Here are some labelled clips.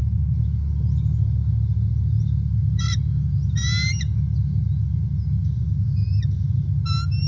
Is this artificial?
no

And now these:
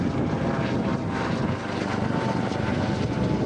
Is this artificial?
no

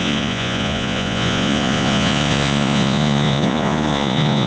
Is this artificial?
yes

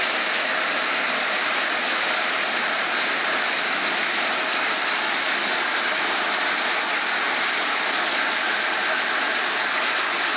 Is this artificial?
no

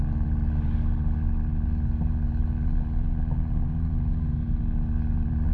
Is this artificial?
no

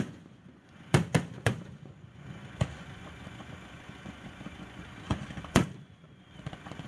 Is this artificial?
yes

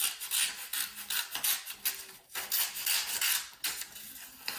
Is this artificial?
no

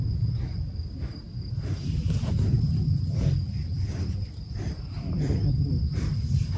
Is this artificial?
no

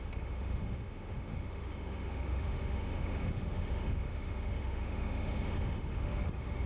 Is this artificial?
yes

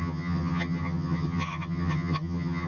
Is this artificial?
yes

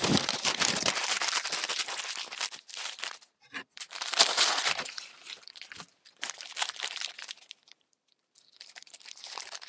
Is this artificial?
yes